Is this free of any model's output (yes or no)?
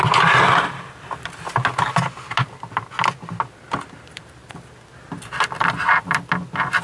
yes